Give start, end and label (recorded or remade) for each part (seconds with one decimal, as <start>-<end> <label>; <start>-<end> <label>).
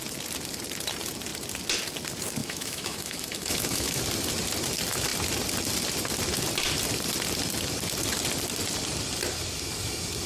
0.0-2.4 recorded; 2.4-4.0 remade; 4.0-10.3 recorded